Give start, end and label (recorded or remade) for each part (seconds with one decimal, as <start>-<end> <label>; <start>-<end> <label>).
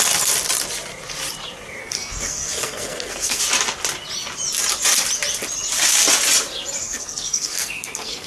0.0-1.8 recorded; 1.8-3.4 remade; 3.4-6.8 recorded; 6.8-8.3 remade